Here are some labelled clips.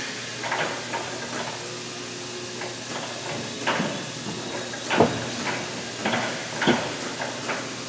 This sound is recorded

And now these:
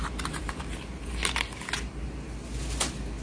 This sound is recorded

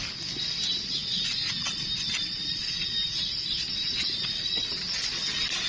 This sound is recorded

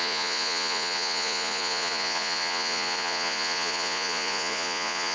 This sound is remade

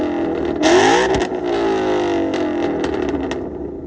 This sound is recorded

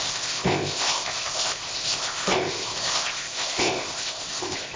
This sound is remade